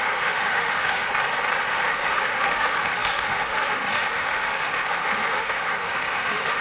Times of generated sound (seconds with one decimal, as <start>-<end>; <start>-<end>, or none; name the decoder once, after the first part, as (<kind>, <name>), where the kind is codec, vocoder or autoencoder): 0.0-1.1 (autoencoder, DAC-VAE); 1.7-6.6